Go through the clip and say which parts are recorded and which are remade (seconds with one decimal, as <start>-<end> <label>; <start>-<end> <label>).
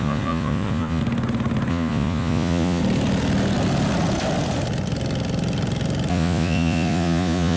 0.0-1.0 remade; 1.0-1.7 recorded; 1.7-2.8 remade; 2.8-6.1 recorded; 6.1-7.6 remade